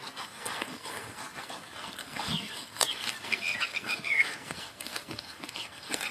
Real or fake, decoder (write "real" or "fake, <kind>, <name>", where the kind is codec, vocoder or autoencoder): fake, codec, SNAC